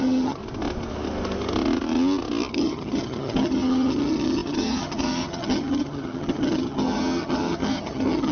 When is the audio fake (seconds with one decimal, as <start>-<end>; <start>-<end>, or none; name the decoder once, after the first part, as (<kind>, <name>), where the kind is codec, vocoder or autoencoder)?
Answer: 0.0-0.4 (vocoder, HiFi-GAN); 2.5-8.3